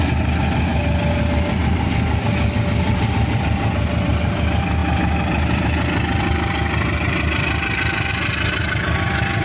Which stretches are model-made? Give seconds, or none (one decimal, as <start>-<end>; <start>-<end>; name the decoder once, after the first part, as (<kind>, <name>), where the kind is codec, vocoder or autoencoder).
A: none